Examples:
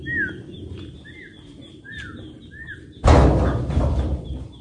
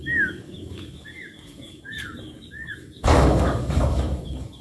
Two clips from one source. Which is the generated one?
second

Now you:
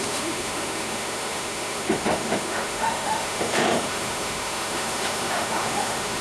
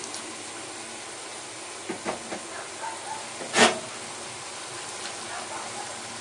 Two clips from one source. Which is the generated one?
first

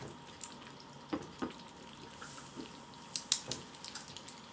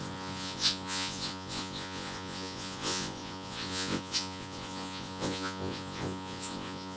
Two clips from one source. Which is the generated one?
second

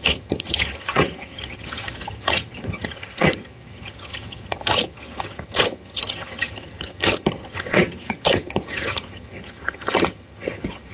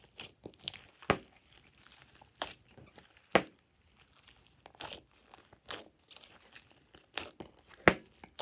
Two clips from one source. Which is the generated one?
first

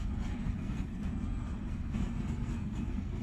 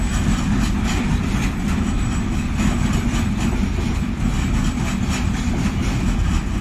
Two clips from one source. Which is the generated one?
first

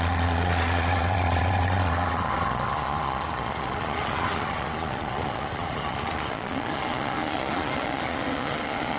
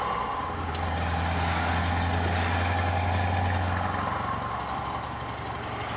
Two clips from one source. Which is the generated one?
first